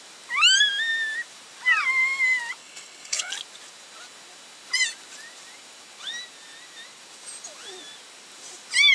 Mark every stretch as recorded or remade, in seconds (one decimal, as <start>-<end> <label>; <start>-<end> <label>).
0.0-2.6 recorded; 2.6-3.3 remade; 3.3-8.9 recorded